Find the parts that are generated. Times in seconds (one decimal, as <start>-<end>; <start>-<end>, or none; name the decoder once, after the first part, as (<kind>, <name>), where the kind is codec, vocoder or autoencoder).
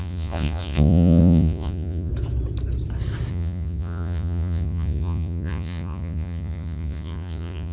0.0-2.1 (vocoder, Vocos); 3.3-7.7